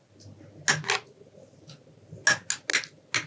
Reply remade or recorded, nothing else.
recorded